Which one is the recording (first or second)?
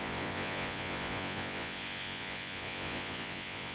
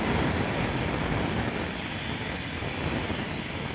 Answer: second